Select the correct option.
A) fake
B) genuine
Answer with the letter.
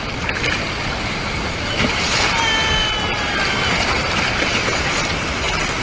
B